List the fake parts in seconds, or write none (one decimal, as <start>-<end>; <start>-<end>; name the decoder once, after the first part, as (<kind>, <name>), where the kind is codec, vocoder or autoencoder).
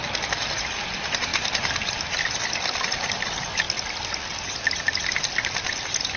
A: none